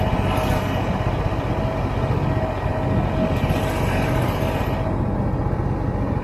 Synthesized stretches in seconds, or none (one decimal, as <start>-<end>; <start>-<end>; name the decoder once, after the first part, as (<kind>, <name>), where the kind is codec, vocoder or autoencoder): none